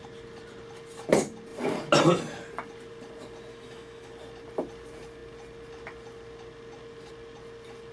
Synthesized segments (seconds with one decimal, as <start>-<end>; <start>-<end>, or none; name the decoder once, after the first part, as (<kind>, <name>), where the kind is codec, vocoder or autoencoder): 3.5-4.1 (autoencoder, DAC-VAE)